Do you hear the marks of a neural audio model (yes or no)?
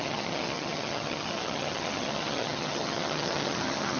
yes